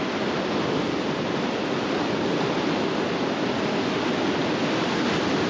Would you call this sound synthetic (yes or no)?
no